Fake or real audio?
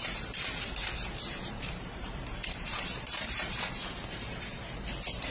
fake